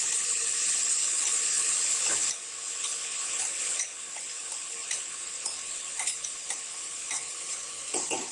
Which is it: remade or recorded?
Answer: remade